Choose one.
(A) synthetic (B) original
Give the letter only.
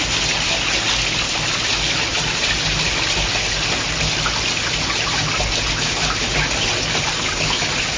B